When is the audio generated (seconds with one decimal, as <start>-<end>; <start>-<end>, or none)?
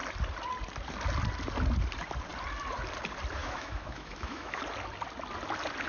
3.4-4.6